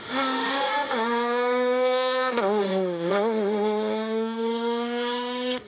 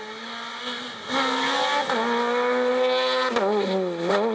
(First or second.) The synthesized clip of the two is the first